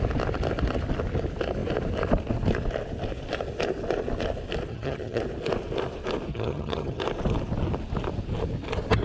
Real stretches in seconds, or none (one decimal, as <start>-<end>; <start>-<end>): 0.0-4.7; 5.2-6.3; 7.0-9.0